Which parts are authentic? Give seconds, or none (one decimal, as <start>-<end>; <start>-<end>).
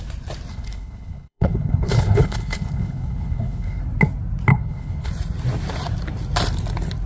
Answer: 0.0-0.5; 3.8-4.5; 5.1-7.1